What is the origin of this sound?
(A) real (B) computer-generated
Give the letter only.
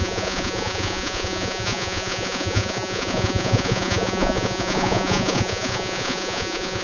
B